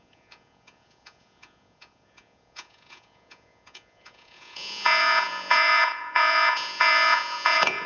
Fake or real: fake